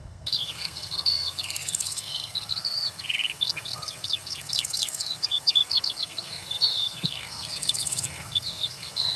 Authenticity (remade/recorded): remade